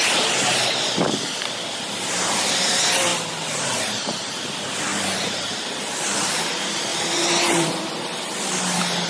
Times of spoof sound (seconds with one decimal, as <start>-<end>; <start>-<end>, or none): 4.9-5.8; 6.9-8.6